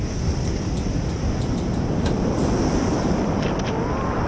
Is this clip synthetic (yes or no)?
no